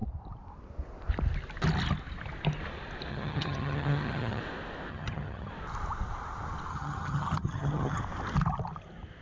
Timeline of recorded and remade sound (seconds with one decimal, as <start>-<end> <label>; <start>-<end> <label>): 0.0-3.1 recorded; 3.1-4.4 remade; 4.4-4.9 recorded; 4.9-5.5 remade; 5.5-6.7 recorded; 6.7-8.0 remade; 8.0-9.2 recorded